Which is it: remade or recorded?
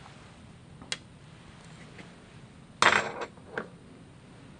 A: recorded